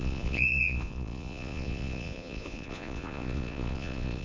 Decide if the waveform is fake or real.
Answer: fake